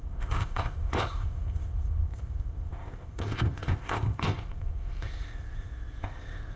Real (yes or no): no